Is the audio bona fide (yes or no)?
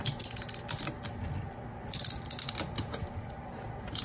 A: yes